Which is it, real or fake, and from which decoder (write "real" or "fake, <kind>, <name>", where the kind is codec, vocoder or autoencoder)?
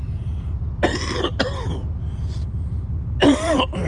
real